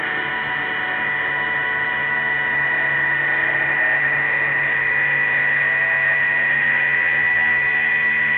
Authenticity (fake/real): fake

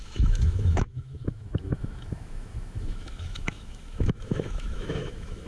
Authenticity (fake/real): fake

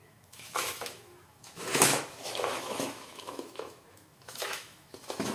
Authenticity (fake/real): fake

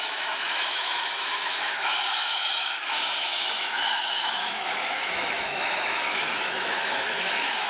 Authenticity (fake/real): fake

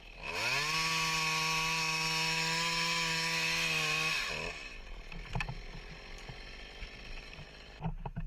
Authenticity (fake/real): real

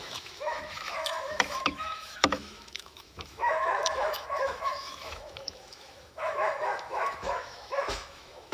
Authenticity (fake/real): fake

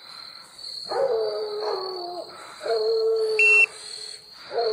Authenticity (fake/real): real